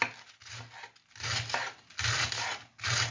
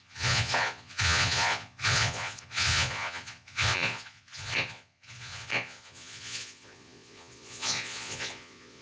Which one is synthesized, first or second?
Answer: second